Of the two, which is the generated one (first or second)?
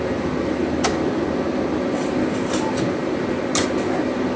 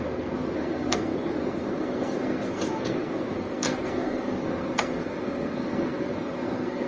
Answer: second